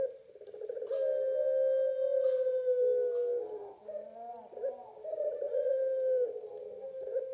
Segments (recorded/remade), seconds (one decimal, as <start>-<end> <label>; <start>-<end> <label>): 0.0-5.1 recorded; 5.1-5.7 remade; 5.7-7.3 recorded